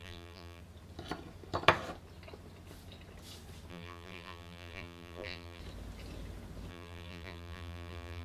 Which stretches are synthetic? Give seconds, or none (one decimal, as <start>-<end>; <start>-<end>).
0.0-0.6; 3.7-5.6; 6.7-8.2